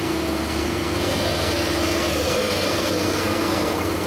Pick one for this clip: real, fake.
fake